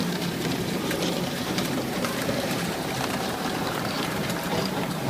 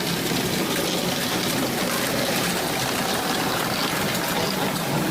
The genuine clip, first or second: second